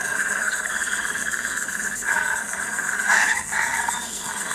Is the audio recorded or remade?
remade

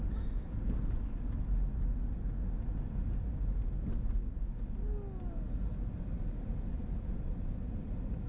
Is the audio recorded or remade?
recorded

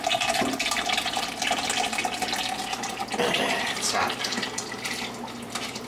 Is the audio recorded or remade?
remade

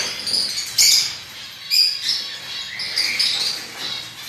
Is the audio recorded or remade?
recorded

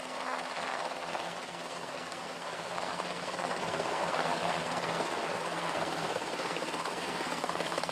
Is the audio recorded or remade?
remade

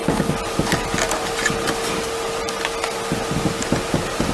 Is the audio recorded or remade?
recorded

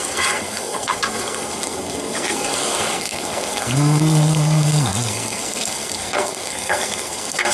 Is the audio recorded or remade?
remade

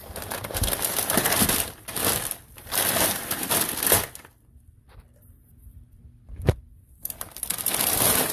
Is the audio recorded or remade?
remade